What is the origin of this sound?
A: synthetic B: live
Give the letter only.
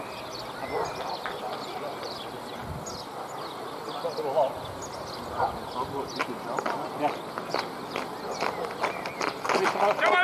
B